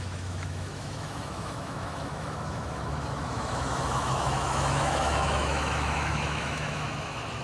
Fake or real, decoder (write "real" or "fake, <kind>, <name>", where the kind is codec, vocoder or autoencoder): fake, autoencoder, DAC-VAE